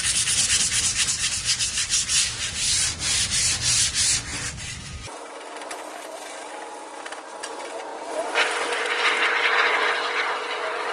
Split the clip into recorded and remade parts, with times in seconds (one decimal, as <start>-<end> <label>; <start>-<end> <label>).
0.0-10.9 recorded